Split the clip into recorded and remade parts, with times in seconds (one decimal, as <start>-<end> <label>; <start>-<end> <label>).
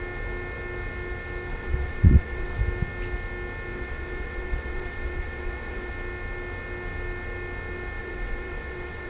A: 0.0-1.5 recorded; 1.5-2.6 remade; 2.6-3.7 recorded; 3.7-5.9 remade; 5.9-8.0 recorded; 8.0-9.1 remade